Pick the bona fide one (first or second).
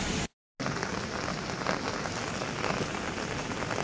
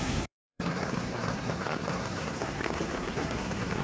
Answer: first